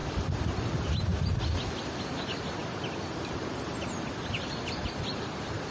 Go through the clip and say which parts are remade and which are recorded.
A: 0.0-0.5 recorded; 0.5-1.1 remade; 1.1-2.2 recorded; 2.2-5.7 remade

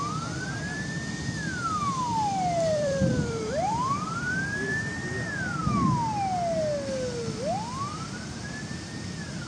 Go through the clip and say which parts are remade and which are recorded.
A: 0.0-2.1 recorded; 2.1-4.8 remade; 4.8-9.5 recorded

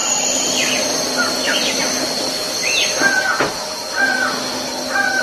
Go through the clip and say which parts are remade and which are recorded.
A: 0.0-0.5 remade; 0.5-5.2 recorded